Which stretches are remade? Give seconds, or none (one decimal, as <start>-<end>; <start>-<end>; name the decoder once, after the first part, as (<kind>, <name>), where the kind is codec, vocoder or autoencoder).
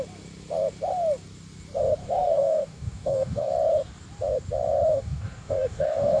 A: 2.0-3.5 (codec, DAC); 4.9-6.2